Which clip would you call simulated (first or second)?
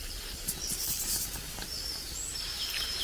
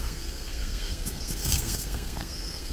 second